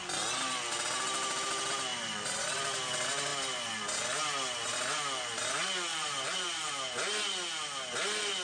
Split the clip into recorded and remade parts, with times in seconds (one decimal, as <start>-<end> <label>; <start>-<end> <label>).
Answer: 0.0-1.9 recorded; 1.9-2.5 remade; 2.5-5.9 recorded; 5.9-6.7 remade; 6.7-8.4 recorded